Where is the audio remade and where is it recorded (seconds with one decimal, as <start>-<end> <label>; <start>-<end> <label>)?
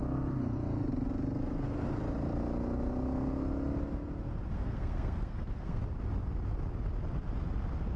0.0-4.5 recorded; 4.5-5.8 remade; 5.8-8.0 recorded